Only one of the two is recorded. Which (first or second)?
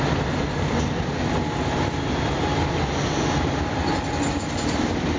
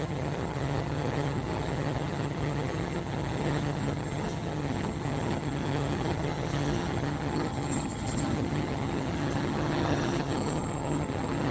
first